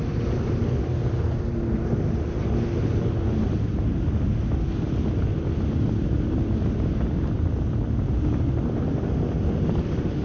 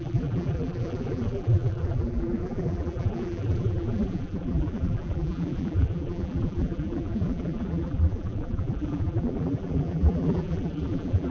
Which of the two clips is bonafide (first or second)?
first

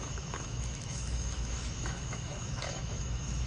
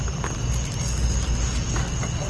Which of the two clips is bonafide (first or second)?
second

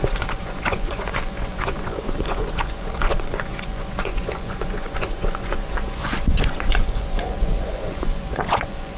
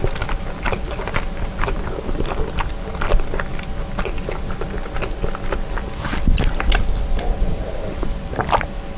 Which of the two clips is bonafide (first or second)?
second